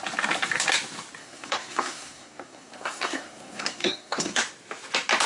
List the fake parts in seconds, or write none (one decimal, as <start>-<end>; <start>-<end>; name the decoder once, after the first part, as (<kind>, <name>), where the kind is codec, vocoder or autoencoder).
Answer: 1.2-4.4 (codec, SNAC)